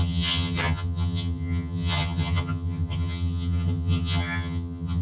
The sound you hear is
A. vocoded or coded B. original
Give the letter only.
A